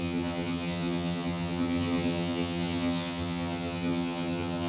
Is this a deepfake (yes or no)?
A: yes